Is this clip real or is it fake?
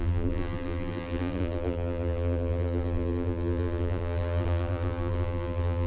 fake